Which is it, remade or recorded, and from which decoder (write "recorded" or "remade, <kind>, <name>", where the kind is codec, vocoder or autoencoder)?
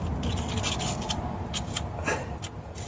recorded